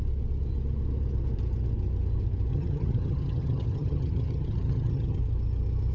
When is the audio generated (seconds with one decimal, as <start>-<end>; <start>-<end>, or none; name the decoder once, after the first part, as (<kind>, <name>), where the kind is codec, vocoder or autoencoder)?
2.5-5.2 (vocoder, HiFi-GAN)